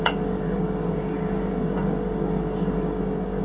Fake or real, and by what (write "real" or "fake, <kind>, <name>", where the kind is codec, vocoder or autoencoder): fake, codec, DAC